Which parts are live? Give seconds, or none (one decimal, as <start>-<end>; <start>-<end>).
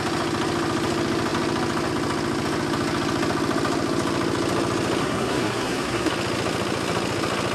0.0-5.0; 6.1-7.5